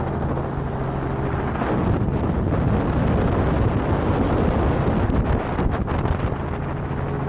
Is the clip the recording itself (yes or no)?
yes